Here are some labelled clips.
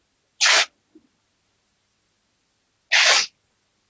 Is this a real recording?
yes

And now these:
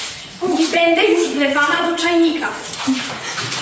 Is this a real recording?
no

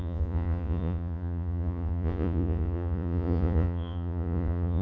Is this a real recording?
no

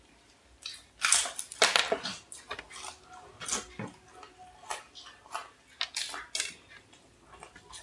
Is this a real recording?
yes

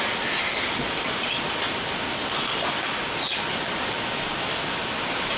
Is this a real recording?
yes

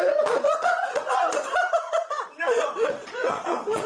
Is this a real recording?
no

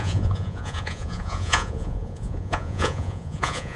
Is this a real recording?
no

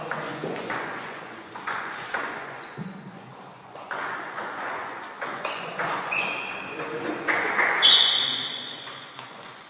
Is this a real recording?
no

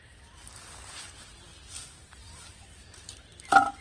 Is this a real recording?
yes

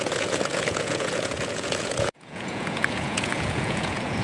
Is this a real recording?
no